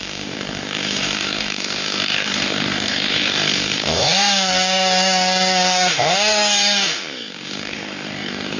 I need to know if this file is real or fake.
fake